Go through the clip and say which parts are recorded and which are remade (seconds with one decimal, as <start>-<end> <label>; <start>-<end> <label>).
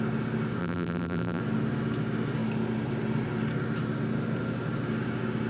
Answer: 0.0-0.6 recorded; 0.6-1.4 remade; 1.4-5.5 recorded